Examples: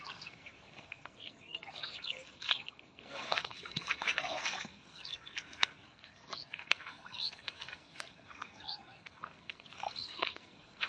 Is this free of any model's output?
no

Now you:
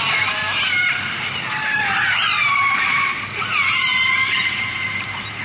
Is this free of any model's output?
no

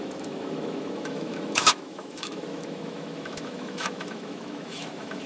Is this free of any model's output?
no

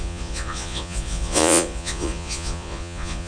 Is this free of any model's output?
no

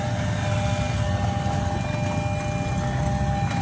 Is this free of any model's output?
yes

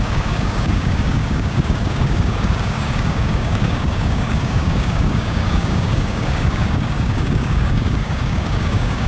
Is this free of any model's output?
no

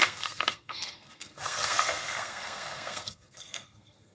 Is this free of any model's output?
no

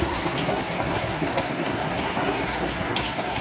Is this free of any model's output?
no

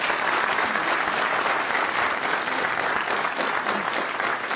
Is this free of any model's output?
yes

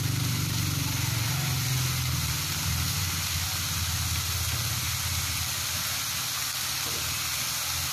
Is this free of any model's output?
yes